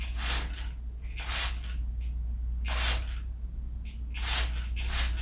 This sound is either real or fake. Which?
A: real